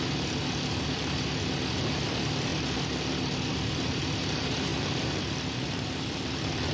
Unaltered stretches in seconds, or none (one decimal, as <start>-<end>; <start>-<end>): 0.0-6.7